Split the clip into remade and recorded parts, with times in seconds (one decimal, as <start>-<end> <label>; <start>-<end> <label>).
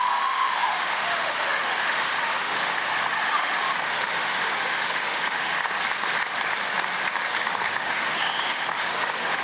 0.0-5.6 remade; 5.6-7.7 recorded; 7.7-9.4 remade